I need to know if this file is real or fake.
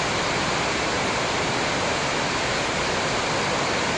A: real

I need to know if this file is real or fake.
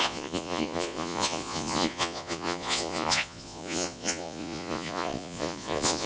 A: fake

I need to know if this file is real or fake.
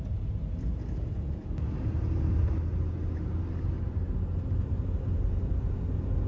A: real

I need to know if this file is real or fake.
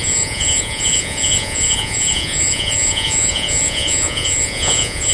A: fake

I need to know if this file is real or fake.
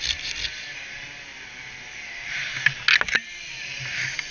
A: real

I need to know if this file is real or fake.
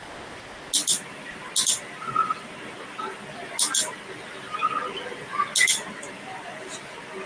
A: real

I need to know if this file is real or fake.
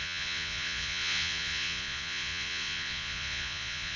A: fake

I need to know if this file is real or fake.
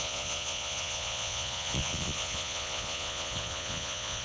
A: fake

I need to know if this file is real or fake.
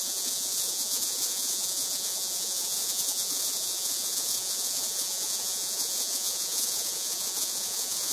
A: fake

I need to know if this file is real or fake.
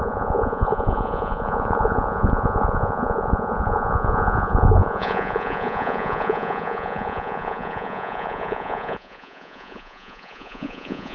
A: fake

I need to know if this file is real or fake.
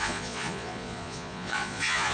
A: fake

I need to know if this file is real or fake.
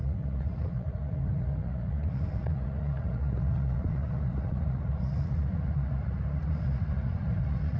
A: fake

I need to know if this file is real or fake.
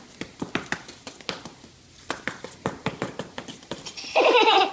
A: real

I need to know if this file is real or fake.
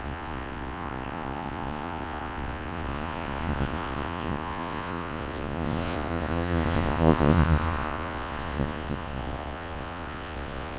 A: fake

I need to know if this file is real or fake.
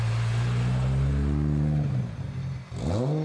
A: real